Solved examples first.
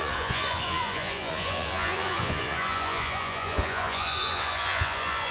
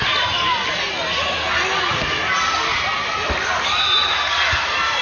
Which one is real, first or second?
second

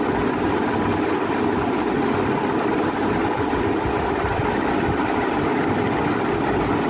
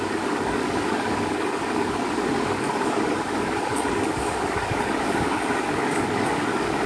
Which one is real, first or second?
first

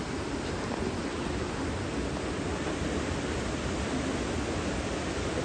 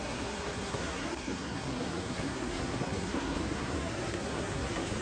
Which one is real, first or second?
first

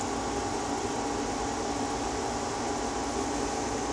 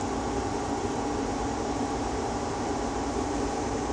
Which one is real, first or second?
first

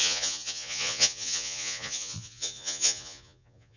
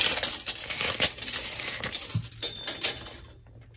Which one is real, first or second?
second